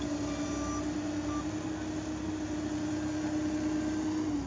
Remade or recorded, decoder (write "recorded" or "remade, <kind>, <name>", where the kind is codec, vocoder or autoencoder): recorded